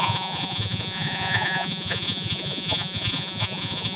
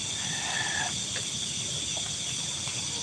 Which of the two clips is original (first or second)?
second